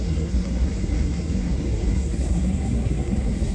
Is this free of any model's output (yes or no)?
no